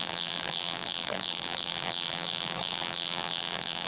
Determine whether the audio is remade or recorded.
remade